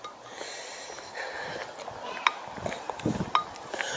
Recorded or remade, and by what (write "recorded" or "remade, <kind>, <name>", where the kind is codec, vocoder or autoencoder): recorded